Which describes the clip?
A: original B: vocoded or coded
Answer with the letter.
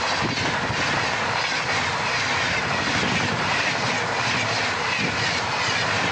A